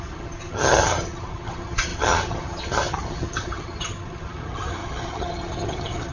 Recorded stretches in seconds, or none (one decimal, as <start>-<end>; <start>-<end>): none